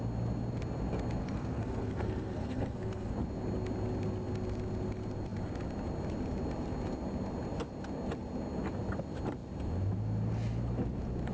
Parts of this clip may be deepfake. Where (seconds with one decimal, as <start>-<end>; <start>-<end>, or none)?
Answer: 1.2-3.1